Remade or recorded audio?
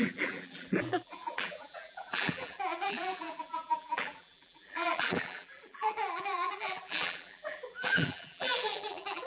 remade